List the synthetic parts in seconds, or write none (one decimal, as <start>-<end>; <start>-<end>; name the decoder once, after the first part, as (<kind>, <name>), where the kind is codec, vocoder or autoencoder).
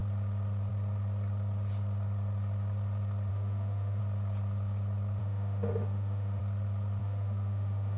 3.3-4.0 (autoencoder, DAC-VAE); 5.2-6.4; 7.0-8.0